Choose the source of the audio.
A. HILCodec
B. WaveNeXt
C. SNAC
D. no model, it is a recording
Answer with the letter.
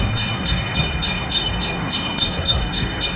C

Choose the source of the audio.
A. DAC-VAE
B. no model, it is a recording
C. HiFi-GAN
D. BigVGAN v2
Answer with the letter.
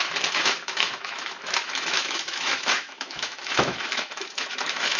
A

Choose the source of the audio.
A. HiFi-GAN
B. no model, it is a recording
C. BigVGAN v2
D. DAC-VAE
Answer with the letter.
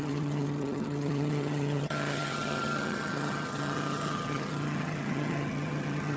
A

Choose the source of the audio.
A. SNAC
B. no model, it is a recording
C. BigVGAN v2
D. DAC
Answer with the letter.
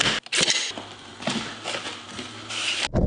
B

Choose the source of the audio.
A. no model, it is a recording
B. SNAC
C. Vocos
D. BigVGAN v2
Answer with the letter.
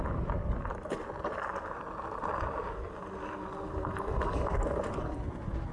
A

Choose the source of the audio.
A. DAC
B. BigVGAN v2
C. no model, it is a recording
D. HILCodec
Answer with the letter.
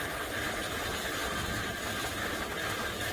C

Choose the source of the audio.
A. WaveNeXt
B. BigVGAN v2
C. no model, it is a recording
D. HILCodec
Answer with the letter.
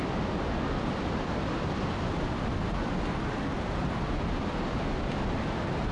C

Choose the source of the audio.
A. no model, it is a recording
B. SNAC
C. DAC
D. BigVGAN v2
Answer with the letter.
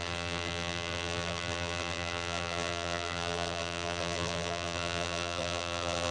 D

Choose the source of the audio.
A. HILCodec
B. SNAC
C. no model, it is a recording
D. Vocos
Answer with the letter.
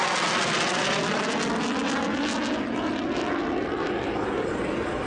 C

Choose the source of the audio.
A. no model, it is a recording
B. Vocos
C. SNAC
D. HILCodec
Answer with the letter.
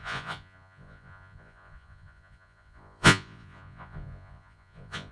B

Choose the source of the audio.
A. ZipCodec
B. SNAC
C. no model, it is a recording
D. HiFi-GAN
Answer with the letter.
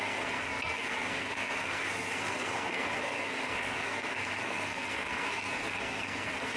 B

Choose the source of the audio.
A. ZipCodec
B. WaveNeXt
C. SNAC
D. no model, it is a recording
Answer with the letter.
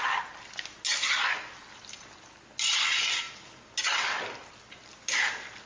D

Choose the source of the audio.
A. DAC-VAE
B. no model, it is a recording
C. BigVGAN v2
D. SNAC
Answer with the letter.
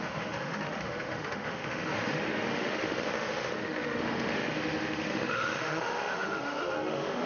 A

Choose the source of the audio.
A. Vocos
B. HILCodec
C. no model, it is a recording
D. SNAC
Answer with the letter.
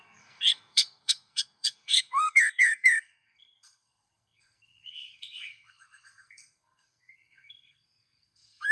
D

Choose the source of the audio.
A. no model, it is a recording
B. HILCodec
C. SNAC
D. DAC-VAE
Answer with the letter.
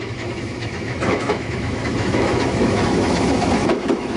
D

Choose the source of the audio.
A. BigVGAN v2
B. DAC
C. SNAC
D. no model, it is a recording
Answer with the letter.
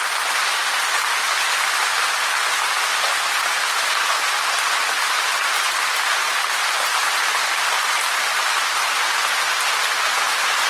D